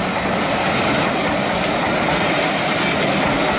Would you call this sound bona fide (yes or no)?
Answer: yes